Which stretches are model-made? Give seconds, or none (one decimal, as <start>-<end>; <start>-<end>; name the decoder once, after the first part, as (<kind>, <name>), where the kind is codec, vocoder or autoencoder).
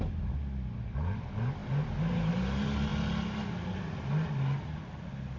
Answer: none